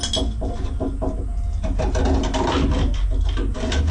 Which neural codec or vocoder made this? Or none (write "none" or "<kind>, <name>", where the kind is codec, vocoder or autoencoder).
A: none